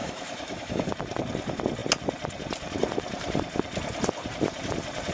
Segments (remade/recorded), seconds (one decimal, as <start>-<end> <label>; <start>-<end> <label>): 0.0-0.9 remade; 0.9-5.1 recorded